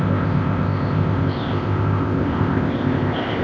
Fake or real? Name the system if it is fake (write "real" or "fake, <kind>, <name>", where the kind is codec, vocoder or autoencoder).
fake, codec, ZipCodec